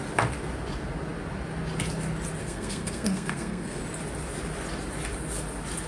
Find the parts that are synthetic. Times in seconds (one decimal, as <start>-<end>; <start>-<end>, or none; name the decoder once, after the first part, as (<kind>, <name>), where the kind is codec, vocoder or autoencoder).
2.4-3.8 (codec, SNAC)